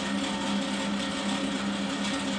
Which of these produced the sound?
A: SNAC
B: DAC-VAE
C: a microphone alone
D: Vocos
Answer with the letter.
C